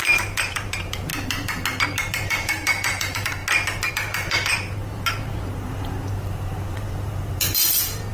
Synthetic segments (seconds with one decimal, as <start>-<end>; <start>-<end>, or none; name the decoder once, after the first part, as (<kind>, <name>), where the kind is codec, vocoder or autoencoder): 0.0-1.1 (vocoder, BigVGAN v2); 2.0-3.4; 3.9-8.1